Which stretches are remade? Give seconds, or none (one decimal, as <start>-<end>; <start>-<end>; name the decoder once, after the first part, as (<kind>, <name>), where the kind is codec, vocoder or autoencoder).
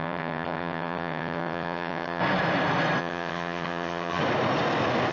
0.0-2.2 (vocoder, HiFi-GAN); 3.0-4.2